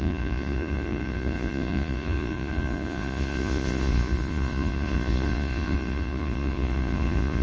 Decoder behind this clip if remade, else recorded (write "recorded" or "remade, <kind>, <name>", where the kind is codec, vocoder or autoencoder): remade, vocoder, Vocos